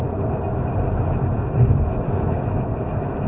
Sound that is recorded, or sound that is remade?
recorded